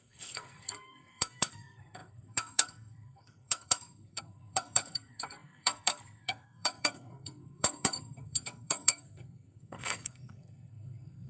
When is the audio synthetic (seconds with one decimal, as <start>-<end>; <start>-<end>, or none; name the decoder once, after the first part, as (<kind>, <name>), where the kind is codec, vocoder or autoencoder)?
0.0-11.3 (codec, SNAC)